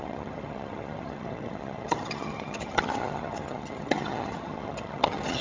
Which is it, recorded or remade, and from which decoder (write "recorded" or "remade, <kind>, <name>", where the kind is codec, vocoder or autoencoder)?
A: remade, vocoder, HiFi-GAN